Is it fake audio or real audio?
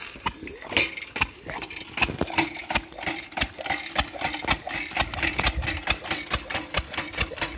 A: real